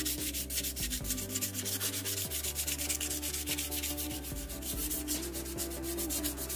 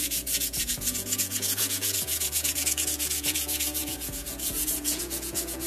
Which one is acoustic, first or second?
first